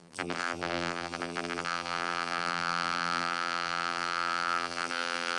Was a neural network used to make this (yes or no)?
yes